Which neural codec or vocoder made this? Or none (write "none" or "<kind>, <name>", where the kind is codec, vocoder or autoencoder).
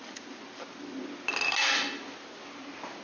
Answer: none